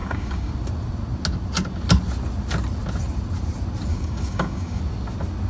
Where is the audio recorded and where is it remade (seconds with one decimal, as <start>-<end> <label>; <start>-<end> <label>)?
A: 0.0-0.5 remade; 0.5-3.9 recorded; 3.9-4.8 remade; 4.8-5.5 recorded